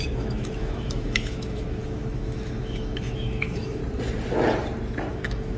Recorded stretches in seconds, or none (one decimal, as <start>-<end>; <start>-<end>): 3.8-5.1